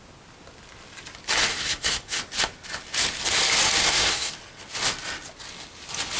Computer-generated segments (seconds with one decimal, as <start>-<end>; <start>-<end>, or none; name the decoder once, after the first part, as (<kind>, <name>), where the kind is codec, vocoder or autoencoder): 1.5-2.2 (codec, SNAC); 3.8-4.3